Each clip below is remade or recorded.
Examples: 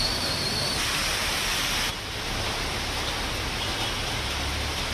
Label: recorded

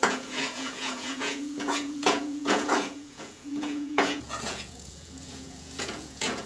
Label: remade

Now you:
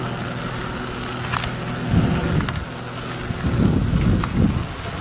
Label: recorded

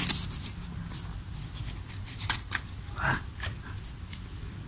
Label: recorded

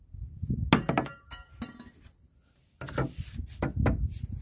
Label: recorded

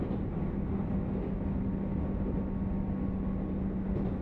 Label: recorded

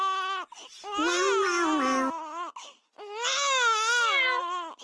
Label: recorded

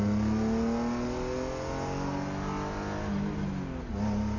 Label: recorded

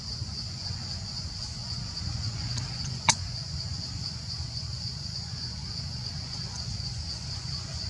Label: remade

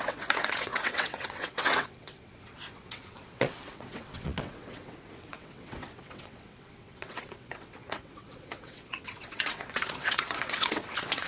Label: remade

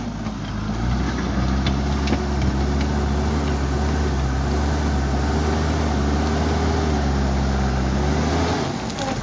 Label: recorded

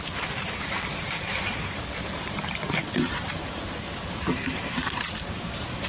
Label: remade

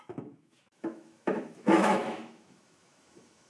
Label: remade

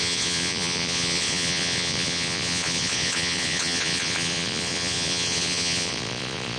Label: remade